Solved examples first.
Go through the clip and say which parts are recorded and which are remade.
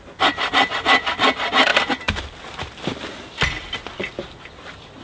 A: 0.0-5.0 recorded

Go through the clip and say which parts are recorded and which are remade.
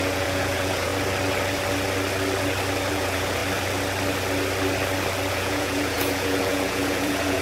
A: 0.0-0.9 remade; 0.9-2.9 recorded; 2.9-3.4 remade; 3.4-5.3 recorded; 5.3-7.4 remade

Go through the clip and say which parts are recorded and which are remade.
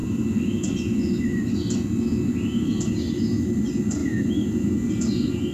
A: 0.0-5.5 recorded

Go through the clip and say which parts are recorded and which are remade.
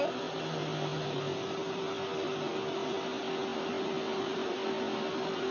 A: 0.0-5.5 recorded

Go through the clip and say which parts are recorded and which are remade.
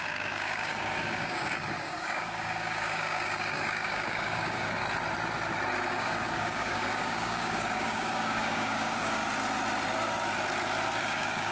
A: 0.0-4.8 remade; 4.8-5.9 recorded; 5.9-9.2 remade; 9.2-11.0 recorded; 11.0-11.5 remade